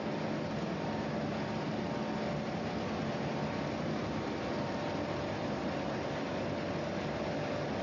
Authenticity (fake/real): real